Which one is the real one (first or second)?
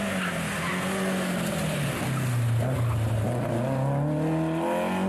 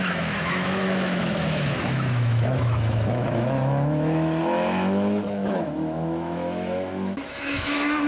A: first